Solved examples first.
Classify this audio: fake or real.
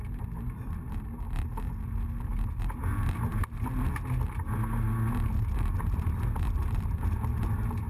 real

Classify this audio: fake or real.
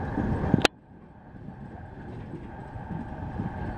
real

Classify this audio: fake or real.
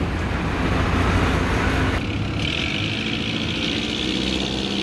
real